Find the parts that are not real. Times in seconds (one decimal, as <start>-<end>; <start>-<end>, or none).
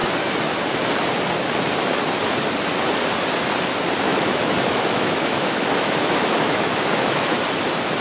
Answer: 4.1-7.4